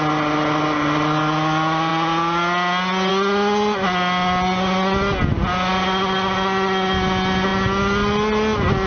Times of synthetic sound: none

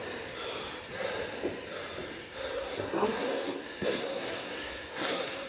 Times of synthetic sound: 2.5-5.5 (codec, SNAC)

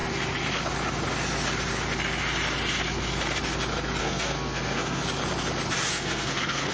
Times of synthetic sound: 4.0-5.0 (codec, SNAC); 5.9-6.7